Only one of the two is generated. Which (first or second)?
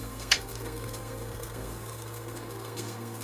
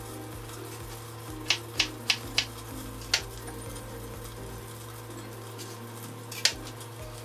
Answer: first